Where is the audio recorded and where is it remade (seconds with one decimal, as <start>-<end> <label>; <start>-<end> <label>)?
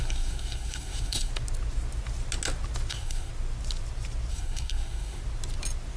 0.0-1.3 remade; 1.3-2.9 recorded; 2.9-3.3 remade; 3.3-4.3 recorded; 4.3-5.2 remade; 5.2-6.0 recorded